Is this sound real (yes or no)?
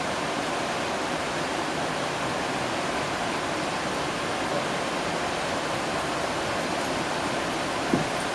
yes